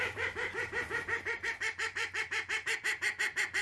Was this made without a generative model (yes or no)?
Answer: no